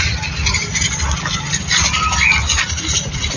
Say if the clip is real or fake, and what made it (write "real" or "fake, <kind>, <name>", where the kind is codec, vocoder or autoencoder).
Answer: real